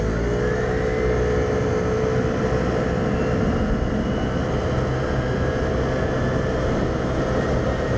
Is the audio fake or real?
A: real